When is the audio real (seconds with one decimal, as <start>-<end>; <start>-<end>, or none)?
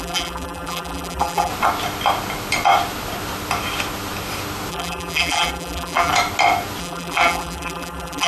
1.5-4.7; 6.1-6.8